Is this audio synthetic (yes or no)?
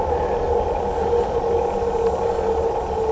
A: no